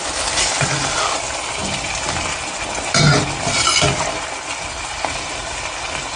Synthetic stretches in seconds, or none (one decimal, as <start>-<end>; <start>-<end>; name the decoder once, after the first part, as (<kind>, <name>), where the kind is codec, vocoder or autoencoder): none